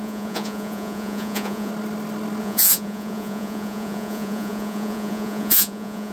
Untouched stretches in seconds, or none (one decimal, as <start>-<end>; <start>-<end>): 1.7-2.4